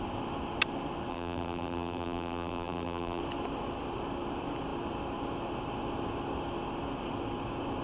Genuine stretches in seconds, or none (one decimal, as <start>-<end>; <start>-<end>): 0.0-1.1; 3.2-7.8